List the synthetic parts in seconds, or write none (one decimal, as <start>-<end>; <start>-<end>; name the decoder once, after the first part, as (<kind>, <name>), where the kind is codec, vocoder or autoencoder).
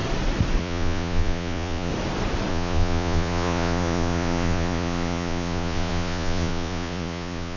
0.6-1.9 (vocoder, Vocos); 2.5-7.6